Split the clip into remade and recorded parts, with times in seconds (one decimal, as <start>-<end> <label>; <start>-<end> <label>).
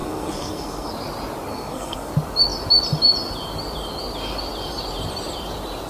0.0-0.9 remade; 0.9-1.5 recorded; 1.5-2.1 remade; 2.1-5.9 recorded